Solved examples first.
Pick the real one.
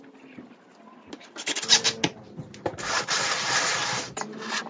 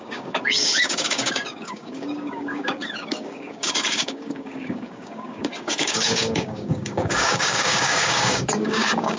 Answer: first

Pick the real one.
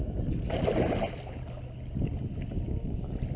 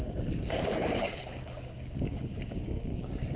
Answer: first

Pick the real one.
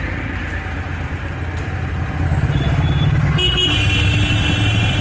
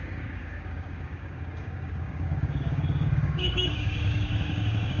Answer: first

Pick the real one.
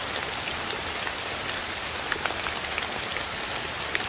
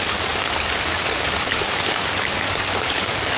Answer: first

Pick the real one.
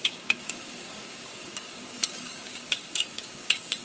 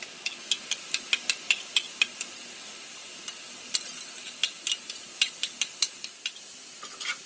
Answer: second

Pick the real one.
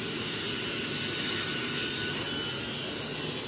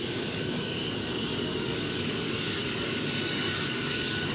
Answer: first